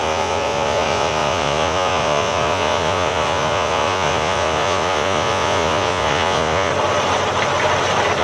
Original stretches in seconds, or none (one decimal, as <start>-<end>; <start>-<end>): 6.7-8.2